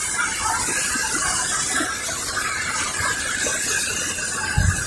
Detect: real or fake real